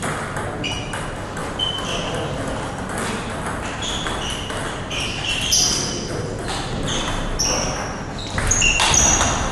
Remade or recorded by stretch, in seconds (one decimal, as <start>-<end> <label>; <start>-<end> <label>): 0.0-9.5 recorded